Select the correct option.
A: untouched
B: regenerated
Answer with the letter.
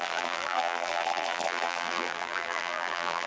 B